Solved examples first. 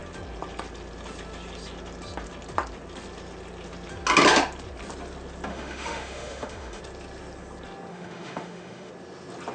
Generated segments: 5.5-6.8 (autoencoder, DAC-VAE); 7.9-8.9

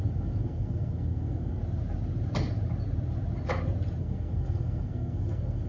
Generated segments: 0.0-1.6 (codec, SNAC); 4.0-5.7

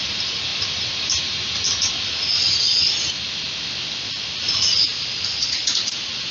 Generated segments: 5.4-6.3 (vocoder, Vocos)

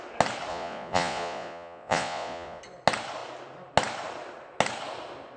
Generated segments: 0.5-2.6 (vocoder, Vocos)

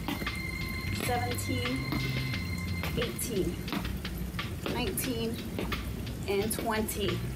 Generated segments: 3.9-4.5 (vocoder, BigVGAN v2)